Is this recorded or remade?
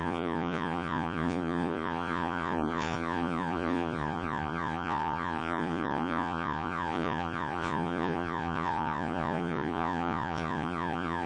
remade